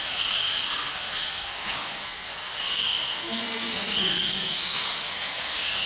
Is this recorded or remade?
remade